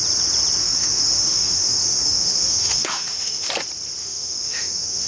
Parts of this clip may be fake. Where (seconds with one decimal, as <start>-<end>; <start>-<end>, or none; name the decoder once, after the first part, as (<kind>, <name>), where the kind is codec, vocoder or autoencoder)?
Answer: 0.6-3.5 (autoencoder, DAC-VAE); 4.0-5.1